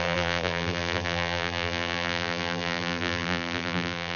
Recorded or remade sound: remade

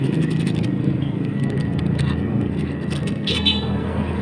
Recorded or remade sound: remade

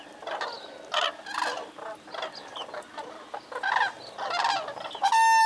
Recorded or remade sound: recorded